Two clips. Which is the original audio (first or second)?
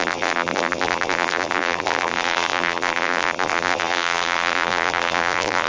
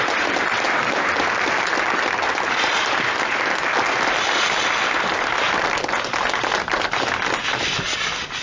second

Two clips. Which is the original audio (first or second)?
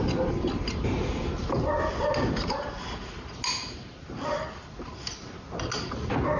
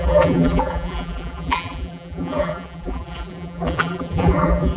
first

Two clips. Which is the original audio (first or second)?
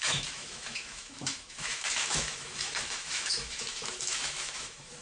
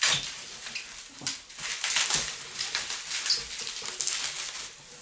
second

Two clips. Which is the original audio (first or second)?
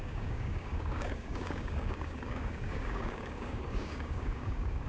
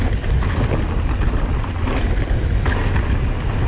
second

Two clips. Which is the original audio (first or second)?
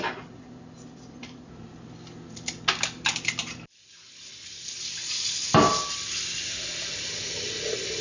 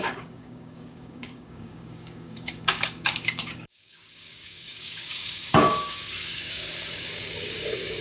first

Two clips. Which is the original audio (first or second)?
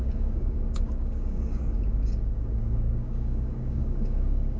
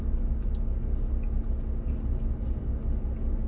second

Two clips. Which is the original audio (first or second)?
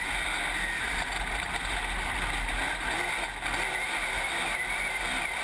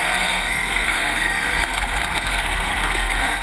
first